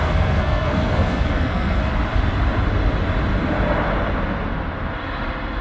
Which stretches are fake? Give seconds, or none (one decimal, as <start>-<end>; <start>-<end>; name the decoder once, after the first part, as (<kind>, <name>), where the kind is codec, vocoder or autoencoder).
0.0-1.8 (codec, SNAC)